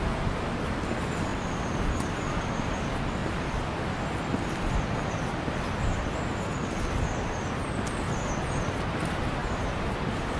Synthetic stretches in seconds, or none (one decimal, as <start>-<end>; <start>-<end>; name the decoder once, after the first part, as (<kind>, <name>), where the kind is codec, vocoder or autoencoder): 3.2-5.1 (vocoder, BigVGAN v2); 9.4-9.9